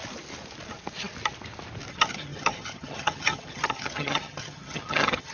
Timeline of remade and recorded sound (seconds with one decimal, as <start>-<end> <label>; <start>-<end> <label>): 0.0-1.9 recorded; 1.9-5.3 remade

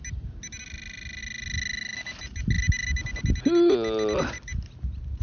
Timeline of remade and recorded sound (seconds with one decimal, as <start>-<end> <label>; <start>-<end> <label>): 0.0-5.2 recorded

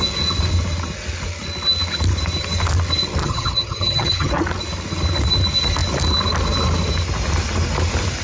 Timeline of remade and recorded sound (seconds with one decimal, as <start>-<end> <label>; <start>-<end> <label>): 0.0-3.2 recorded; 3.2-4.3 remade; 4.3-8.2 recorded

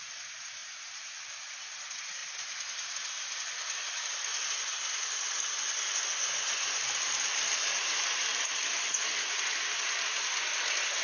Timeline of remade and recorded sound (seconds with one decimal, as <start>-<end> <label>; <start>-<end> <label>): 0.0-0.6 recorded; 0.6-1.2 remade; 1.2-11.0 recorded

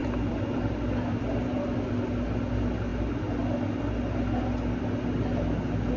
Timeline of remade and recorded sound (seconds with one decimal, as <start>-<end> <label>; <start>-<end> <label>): 0.0-1.9 remade; 1.9-6.0 recorded

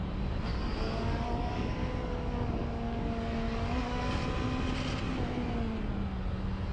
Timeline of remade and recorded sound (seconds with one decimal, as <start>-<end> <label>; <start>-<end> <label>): 0.0-0.5 recorded; 0.5-4.2 remade; 4.2-6.7 recorded